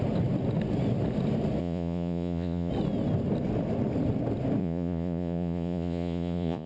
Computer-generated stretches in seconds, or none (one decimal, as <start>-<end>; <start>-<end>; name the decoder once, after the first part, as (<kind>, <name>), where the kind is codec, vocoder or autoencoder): 1.6-2.7 (vocoder, Vocos); 4.6-6.7